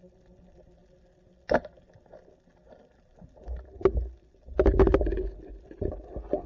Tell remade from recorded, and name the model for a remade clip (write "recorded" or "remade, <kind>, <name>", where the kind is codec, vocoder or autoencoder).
recorded